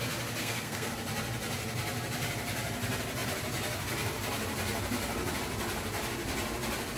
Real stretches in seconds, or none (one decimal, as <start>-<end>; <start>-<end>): 0.0-0.4; 0.9-7.0